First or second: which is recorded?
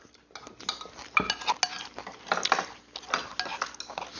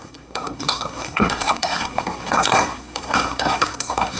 first